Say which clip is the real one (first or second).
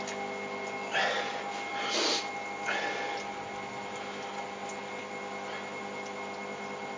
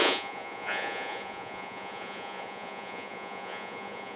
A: first